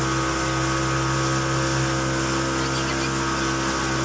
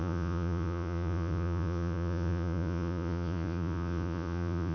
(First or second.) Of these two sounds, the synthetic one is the second